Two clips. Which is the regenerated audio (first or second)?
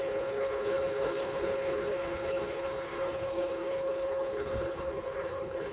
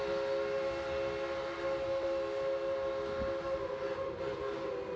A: first